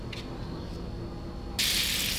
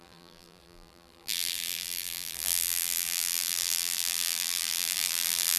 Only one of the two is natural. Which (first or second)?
first